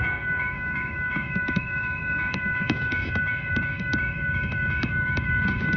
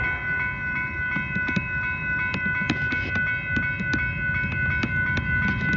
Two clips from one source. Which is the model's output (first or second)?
first